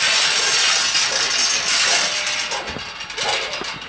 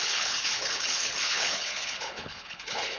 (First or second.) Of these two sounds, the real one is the first